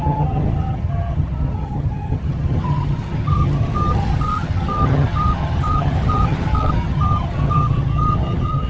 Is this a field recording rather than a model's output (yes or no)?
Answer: no